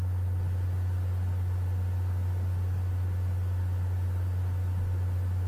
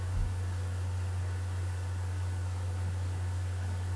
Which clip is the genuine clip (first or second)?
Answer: first